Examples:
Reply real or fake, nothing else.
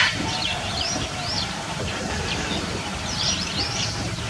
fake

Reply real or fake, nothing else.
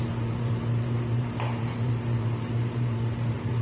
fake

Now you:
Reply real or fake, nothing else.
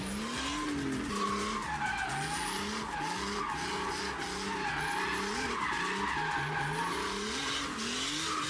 real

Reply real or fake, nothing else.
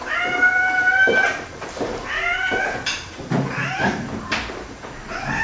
real